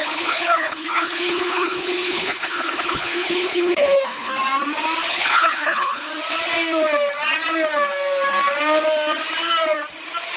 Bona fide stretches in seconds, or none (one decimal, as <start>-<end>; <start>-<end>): 4.3-5.1; 6.1-10.4